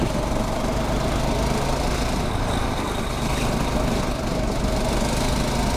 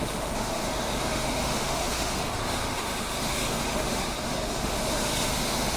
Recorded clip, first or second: first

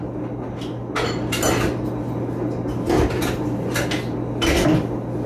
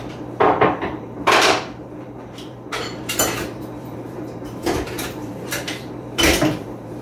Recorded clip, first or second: first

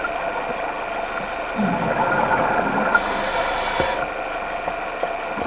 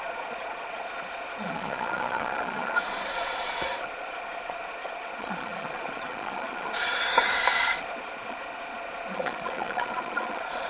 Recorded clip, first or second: first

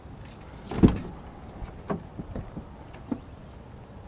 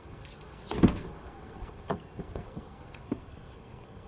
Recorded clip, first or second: first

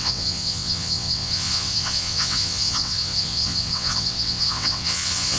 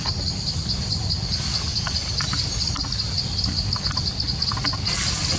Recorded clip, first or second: second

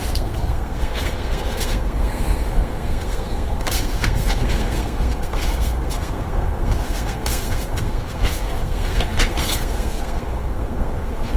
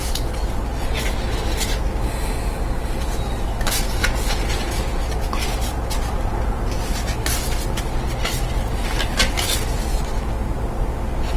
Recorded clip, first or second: second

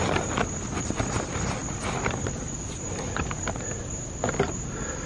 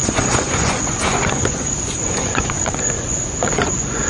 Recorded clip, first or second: first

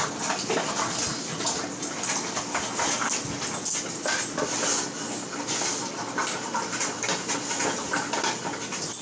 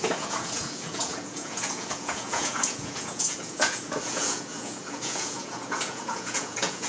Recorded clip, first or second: first